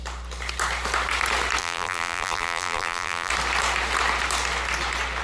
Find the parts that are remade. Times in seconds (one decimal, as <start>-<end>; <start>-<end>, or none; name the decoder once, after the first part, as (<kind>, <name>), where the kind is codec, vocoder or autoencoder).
1.6-3.3 (vocoder, BigVGAN v2)